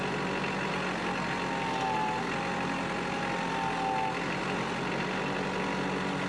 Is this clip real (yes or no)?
yes